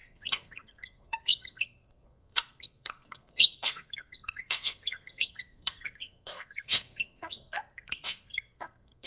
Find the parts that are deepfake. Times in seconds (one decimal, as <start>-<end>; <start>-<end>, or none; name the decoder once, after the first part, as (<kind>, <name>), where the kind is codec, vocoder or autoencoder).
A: 0.0-9.1 (codec, SNAC)